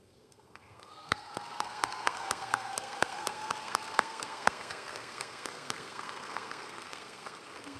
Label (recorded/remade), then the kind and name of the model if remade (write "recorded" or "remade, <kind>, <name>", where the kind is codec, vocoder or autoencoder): remade, codec, SNAC